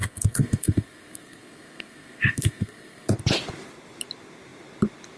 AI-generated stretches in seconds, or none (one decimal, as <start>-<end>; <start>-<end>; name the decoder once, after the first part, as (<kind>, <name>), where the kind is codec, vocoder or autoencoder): 0.0-3.1 (codec, SNAC)